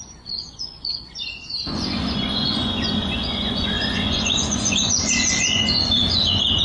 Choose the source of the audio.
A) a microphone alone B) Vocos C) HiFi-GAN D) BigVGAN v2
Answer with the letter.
B